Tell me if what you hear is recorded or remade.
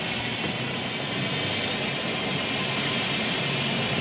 recorded